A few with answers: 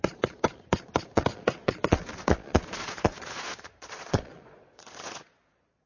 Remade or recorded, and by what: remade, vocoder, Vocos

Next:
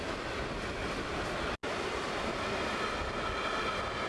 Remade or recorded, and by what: recorded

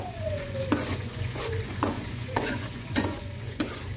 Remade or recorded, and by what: remade, vocoder, Vocos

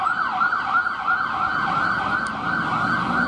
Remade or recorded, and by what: recorded